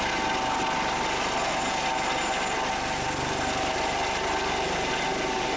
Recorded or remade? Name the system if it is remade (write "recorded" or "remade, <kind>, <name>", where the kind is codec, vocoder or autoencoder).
recorded